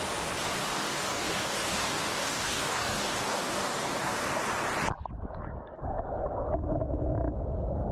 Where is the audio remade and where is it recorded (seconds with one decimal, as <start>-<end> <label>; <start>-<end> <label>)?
0.0-0.6 recorded; 0.6-4.4 remade; 4.4-7.9 recorded

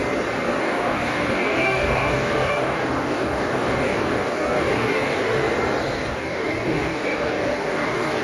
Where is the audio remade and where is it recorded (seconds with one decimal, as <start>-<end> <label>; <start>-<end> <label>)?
0.0-0.6 recorded; 0.6-5.4 remade; 5.4-6.1 recorded; 6.1-8.2 remade

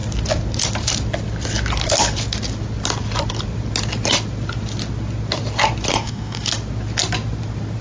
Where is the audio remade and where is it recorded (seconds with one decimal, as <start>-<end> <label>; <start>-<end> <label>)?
0.0-5.9 recorded; 5.9-6.5 remade; 6.5-7.8 recorded

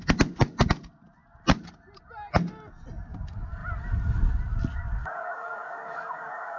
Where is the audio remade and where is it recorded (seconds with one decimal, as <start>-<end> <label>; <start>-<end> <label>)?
0.0-5.0 recorded; 5.0-6.6 remade

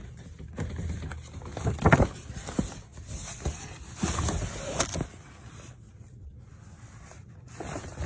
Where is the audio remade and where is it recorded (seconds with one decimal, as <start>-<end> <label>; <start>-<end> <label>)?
0.0-8.1 recorded

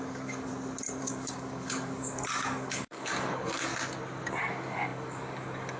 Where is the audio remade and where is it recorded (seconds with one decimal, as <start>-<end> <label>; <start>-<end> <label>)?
0.0-0.5 remade; 0.5-1.0 recorded; 1.0-3.7 remade; 3.7-4.4 recorded; 4.4-5.8 remade

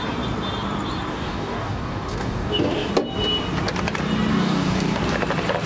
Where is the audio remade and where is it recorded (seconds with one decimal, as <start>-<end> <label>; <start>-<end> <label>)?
0.0-1.1 recorded; 1.1-2.9 remade; 2.9-4.3 recorded; 4.3-5.0 remade; 5.0-5.7 recorded